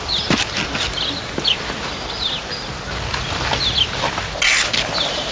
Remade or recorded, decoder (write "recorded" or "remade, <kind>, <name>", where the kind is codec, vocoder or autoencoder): recorded